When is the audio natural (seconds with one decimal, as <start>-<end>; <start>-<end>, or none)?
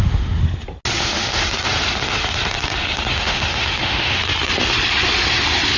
0.4-1.0; 1.4-3.1; 4.2-5.8